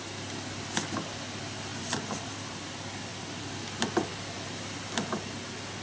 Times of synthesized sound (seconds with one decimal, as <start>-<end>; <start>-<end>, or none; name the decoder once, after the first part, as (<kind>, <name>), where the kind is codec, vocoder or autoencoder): 1.7-2.7 (vocoder, BigVGAN v2)